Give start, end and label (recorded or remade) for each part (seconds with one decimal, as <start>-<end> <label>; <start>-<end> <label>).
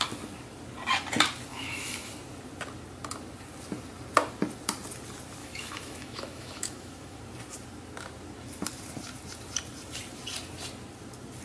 0.0-1.5 recorded; 1.5-2.1 remade; 2.1-5.4 recorded; 5.4-7.2 remade; 7.2-11.4 recorded